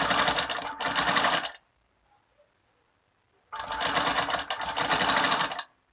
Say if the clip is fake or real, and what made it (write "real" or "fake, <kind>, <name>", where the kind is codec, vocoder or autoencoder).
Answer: real